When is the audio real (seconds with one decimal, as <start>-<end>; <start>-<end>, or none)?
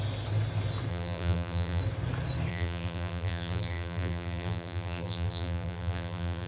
0.0-0.9; 1.8-2.5